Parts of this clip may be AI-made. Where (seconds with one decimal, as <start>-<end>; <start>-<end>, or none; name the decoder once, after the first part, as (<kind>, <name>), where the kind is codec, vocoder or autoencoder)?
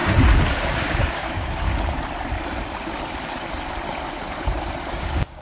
0.5-1.7 (codec, DAC); 4.9-5.4